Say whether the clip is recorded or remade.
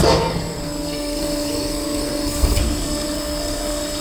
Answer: remade